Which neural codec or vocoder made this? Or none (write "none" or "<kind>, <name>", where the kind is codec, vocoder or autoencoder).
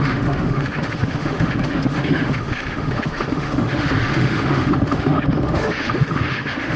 autoencoder, DAC-VAE